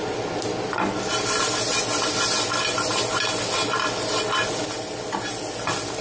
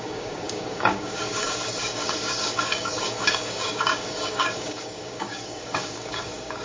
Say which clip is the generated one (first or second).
second